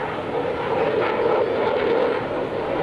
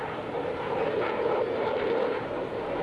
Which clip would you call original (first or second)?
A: first